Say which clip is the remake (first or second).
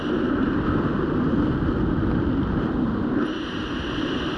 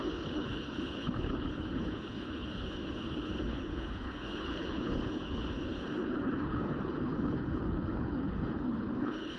second